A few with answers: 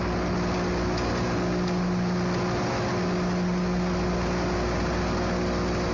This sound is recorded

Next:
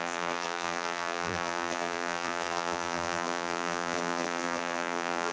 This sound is remade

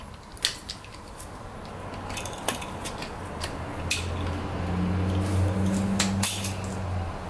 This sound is recorded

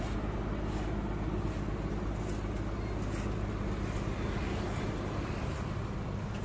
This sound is recorded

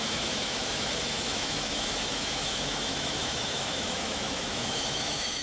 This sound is remade